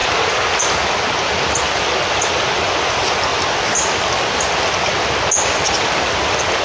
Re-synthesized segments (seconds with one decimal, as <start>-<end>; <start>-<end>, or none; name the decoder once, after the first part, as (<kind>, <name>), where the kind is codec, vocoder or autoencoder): none